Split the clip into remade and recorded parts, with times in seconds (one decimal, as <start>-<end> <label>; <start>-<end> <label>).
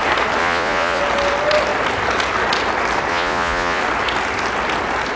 0.0-0.4 recorded; 0.4-1.0 remade; 1.0-3.1 recorded; 3.1-3.8 remade; 3.8-5.2 recorded